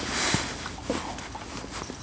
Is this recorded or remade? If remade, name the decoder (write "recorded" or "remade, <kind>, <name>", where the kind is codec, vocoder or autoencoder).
recorded